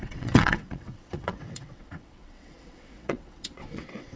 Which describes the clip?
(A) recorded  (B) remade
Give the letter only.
B